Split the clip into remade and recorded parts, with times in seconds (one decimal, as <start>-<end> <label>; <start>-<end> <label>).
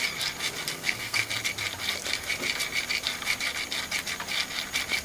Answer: 0.0-0.7 recorded; 0.7-1.3 remade; 1.3-5.0 recorded